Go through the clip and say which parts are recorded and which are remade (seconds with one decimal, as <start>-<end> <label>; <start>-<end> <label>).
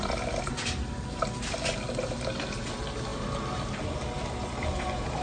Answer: 0.0-5.2 recorded